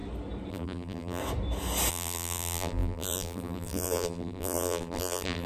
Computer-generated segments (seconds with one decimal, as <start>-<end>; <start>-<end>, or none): 0.5-1.2; 1.9-5.5